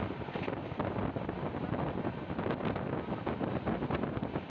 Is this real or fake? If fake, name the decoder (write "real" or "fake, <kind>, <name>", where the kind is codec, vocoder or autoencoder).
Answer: real